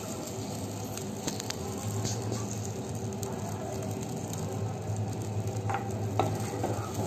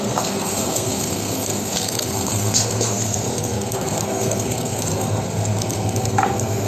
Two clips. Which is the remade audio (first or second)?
second